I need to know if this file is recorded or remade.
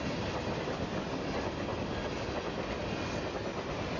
recorded